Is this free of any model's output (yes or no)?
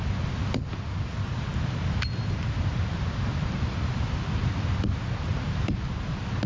yes